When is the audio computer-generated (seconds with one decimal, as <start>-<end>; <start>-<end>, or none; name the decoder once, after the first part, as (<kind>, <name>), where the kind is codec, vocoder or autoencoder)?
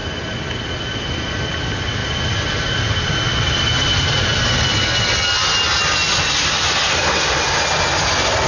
none